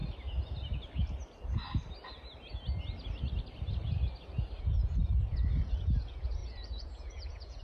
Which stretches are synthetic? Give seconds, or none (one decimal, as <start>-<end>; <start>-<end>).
4.6-7.6